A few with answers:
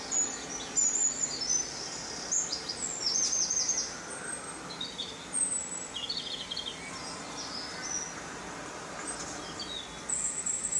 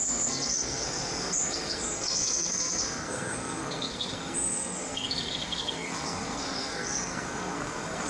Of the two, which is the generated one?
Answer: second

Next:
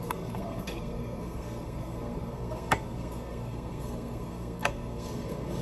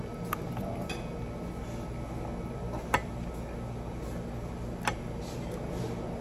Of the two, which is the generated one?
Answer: first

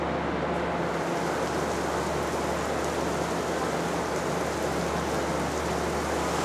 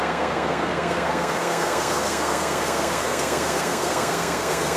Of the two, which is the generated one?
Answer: second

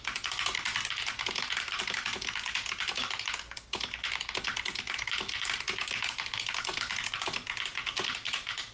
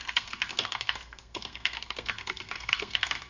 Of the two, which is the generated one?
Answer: second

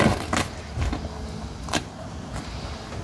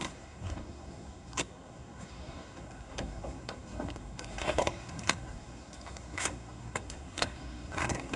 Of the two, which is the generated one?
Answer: second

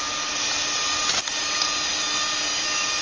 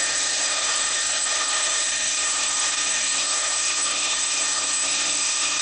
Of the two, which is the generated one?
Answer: second